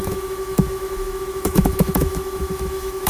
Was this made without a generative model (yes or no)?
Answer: no